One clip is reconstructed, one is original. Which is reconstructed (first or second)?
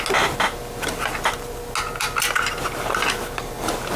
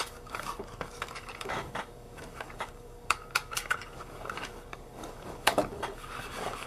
second